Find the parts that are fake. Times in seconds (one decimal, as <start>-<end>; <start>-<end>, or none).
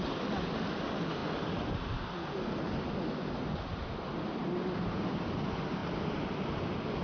1.2-3.1